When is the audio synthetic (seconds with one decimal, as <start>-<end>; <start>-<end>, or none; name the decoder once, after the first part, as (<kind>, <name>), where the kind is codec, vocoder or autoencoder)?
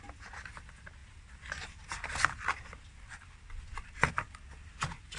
none